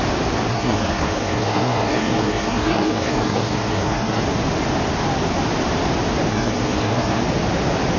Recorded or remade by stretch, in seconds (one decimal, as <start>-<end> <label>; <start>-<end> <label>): 0.0-0.5 recorded; 0.5-4.2 remade; 4.2-6.3 recorded; 6.3-7.2 remade; 7.2-8.0 recorded